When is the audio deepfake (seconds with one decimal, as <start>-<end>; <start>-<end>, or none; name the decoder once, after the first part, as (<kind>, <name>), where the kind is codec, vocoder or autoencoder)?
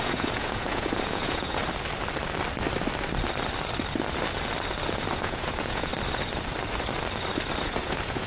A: 0.0-1.6 (vocoder, Vocos); 5.1-5.9; 7.6-8.3